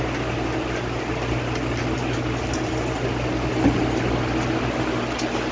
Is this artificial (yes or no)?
no